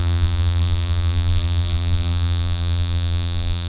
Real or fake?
fake